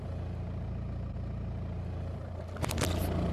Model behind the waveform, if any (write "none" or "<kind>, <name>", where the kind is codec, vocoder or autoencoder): none